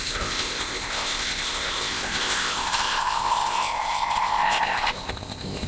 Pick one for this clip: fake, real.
fake